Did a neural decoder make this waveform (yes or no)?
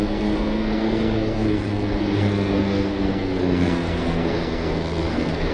yes